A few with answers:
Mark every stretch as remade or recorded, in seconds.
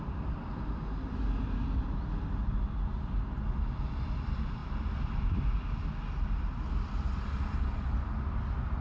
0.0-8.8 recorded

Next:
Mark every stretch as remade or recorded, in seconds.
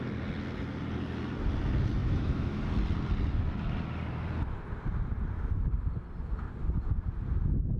0.0-2.0 recorded; 2.0-2.6 remade; 2.6-7.8 recorded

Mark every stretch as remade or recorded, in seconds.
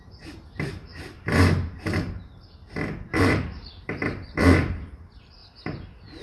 0.0-5.4 remade; 5.4-6.2 recorded